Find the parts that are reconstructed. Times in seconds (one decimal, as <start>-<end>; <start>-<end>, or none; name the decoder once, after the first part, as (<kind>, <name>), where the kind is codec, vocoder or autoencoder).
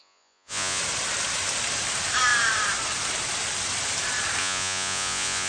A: 0.0-0.8 (vocoder, Vocos); 4.4-5.5